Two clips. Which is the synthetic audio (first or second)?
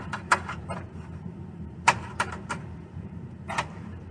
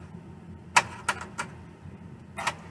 first